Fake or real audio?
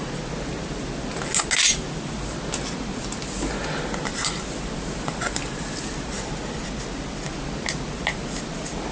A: real